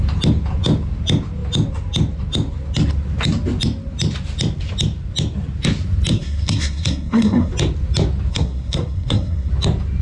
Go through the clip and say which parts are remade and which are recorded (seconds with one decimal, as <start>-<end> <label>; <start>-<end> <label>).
0.0-6.1 recorded; 6.1-7.5 remade; 7.5-8.3 recorded; 8.3-9.5 remade; 9.5-10.0 recorded